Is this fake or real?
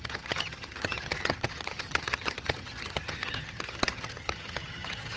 fake